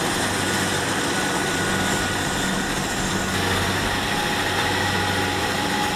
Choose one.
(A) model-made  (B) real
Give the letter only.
B